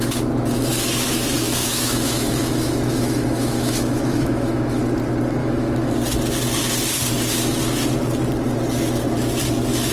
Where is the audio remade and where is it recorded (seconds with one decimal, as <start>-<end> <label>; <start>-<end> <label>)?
0.0-1.6 recorded; 1.6-4.8 remade; 4.8-5.4 recorded; 5.4-5.9 remade; 5.9-9.9 recorded